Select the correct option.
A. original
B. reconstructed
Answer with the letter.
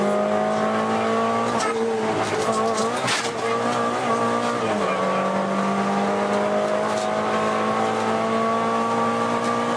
A